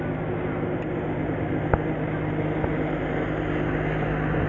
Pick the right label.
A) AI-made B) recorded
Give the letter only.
B